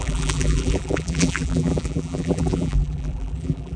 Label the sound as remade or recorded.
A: remade